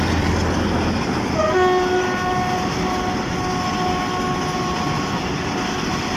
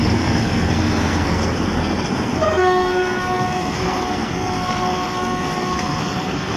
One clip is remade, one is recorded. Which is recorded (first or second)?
first